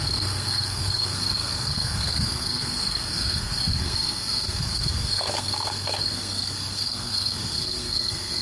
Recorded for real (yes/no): no